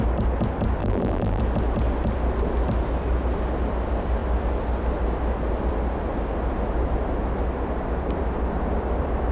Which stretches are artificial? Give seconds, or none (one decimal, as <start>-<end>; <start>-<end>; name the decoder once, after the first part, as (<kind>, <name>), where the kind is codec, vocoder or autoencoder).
0.8-1.4 (vocoder, BigVGAN v2)

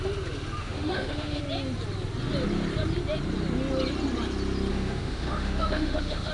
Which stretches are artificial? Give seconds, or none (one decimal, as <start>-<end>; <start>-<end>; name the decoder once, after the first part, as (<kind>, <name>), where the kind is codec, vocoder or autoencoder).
0.6-1.4 (autoencoder, DAC-VAE); 4.7-6.3

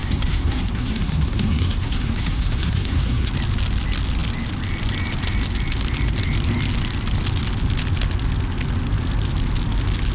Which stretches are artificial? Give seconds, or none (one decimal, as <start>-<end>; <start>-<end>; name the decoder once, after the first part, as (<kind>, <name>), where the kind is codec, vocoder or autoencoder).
0.0-3.3 (codec, SNAC)